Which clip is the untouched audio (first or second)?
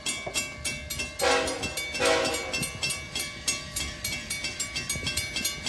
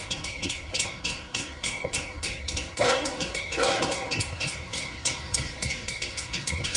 first